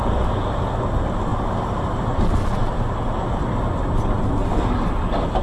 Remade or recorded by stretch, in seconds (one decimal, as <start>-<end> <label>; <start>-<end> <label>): 0.0-1.3 recorded; 1.3-2.2 remade; 2.2-2.6 recorded; 2.6-3.4 remade; 3.4-5.4 recorded